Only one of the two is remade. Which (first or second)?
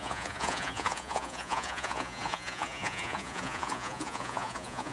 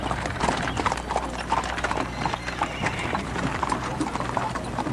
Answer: first